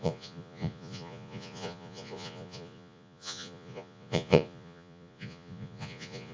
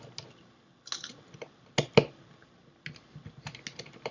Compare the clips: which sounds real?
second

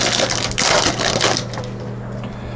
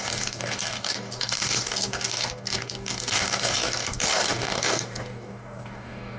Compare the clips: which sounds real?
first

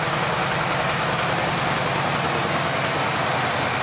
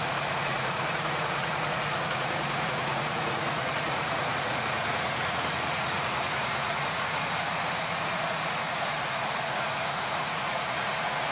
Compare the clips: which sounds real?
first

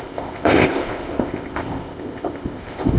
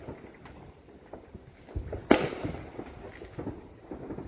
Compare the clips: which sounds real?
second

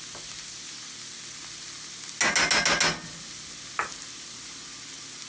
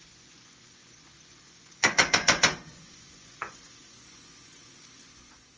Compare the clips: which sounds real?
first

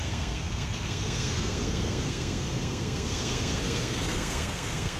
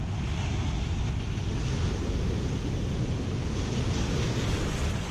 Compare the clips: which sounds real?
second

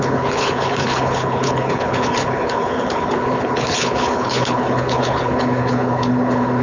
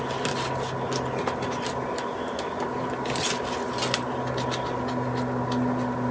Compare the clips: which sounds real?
second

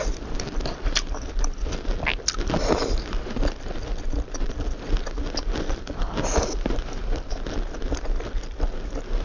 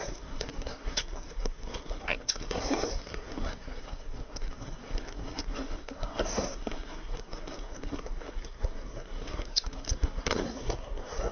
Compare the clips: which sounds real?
first